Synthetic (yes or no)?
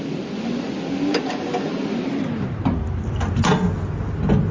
no